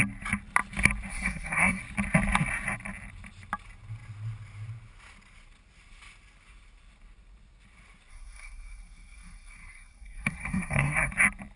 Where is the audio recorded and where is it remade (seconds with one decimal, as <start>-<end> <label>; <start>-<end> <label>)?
0.0-1.1 recorded; 1.1-1.8 remade; 1.8-8.1 recorded; 8.1-11.1 remade; 11.1-11.6 recorded